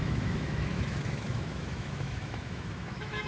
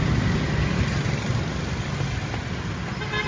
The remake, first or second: first